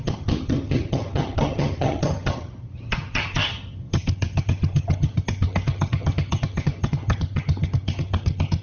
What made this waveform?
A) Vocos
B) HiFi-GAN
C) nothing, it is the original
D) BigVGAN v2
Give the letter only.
B